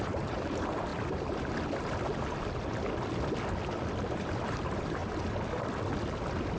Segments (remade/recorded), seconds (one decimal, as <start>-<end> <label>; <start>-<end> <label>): 0.0-0.9 remade; 0.9-4.1 recorded; 4.1-5.0 remade; 5.0-6.6 recorded